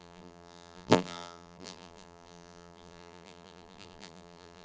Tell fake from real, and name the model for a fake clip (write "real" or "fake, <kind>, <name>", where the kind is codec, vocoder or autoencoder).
fake, vocoder, BigVGAN v2